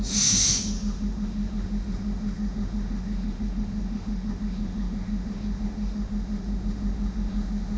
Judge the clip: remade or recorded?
remade